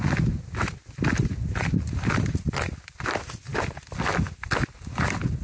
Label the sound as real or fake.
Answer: real